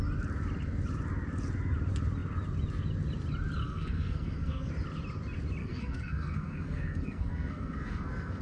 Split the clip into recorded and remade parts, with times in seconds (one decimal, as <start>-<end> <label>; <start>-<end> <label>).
0.0-3.6 recorded; 3.6-4.7 remade; 4.7-5.6 recorded; 5.6-8.4 remade